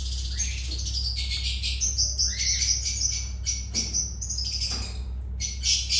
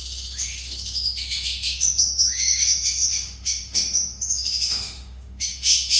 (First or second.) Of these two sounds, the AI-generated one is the second